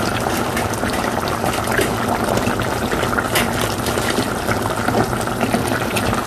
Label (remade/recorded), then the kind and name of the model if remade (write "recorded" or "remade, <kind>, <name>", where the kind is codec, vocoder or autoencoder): recorded